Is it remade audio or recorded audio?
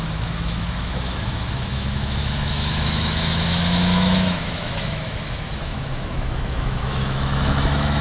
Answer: remade